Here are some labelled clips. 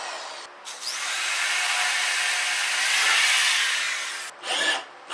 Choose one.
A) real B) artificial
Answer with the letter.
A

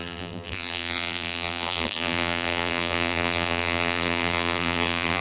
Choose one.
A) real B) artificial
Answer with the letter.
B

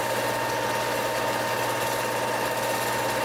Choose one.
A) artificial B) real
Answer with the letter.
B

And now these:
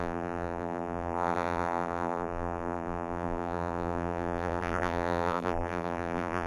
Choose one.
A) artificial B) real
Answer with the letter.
A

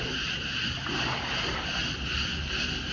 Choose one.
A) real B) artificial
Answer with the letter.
A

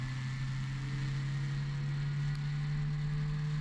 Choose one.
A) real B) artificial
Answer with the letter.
A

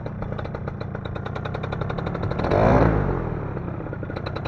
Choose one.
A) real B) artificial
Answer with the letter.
A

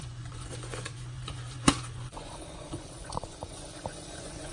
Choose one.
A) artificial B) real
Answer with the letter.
A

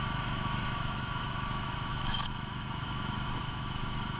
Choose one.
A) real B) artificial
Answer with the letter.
B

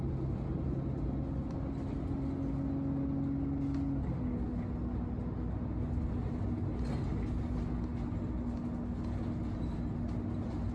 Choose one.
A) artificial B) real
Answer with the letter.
B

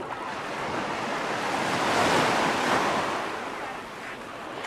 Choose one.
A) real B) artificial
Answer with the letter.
A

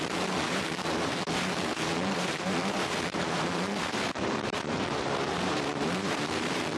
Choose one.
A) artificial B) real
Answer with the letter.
A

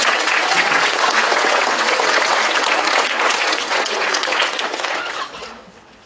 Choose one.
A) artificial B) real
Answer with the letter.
A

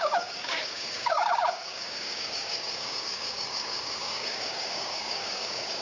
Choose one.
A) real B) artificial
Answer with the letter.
B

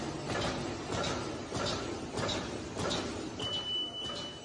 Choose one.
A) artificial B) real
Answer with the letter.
B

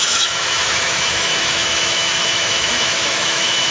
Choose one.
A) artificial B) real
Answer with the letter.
A